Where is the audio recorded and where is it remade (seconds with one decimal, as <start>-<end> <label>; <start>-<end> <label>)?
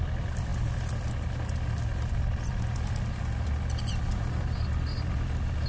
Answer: 0.0-5.7 recorded